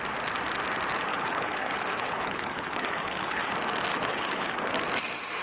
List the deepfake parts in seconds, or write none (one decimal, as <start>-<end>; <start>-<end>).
1.1-3.5; 3.9-4.8